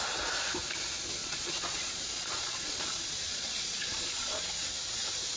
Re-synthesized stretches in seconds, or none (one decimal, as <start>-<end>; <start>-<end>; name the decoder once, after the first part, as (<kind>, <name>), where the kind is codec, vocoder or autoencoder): 1.2-4.4 (vocoder, Vocos)